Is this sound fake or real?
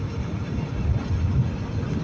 real